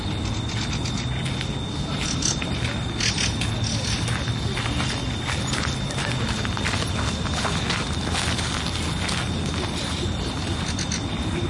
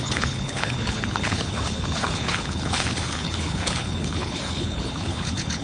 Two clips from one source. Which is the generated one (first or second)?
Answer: second